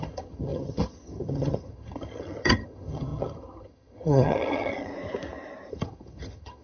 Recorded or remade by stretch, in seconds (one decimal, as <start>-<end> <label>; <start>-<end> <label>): 0.0-4.9 remade; 4.9-5.7 recorded; 5.7-6.6 remade